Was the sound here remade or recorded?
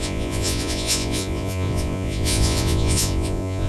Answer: remade